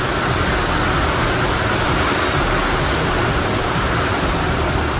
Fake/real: real